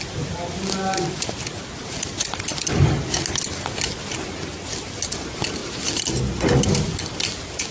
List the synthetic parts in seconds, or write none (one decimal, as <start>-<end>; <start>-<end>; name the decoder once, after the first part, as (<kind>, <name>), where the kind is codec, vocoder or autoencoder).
none